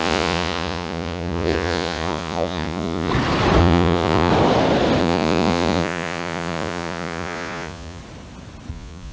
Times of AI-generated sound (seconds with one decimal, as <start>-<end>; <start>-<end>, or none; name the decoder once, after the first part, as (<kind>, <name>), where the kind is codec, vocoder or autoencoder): 0.0-3.1 (vocoder, Vocos); 3.6-4.3; 5.0-8.0; 8.7-9.1